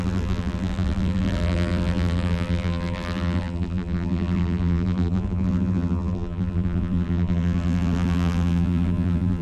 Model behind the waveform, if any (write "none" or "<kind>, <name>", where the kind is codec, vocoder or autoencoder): vocoder, BigVGAN v2